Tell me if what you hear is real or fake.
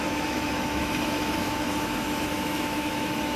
fake